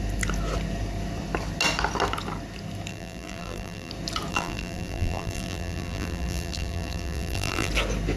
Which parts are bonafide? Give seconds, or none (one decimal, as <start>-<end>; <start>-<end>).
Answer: 0.0-2.9; 3.9-4.3; 7.7-8.2